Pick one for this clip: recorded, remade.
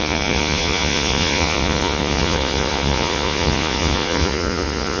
remade